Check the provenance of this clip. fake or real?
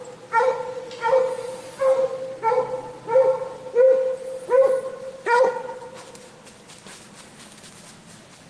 real